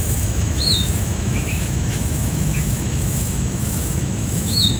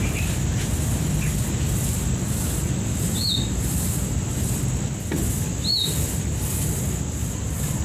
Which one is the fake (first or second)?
first